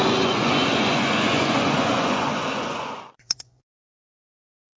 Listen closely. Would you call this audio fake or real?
fake